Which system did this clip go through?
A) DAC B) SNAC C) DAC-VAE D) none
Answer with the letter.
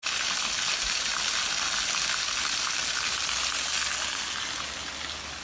D